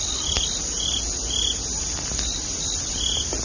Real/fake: real